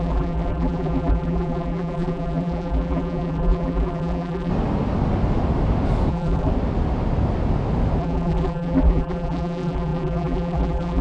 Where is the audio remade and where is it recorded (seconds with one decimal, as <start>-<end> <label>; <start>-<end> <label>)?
0.0-4.5 remade; 4.5-6.1 recorded; 6.1-6.5 remade; 6.5-8.0 recorded; 8.0-11.0 remade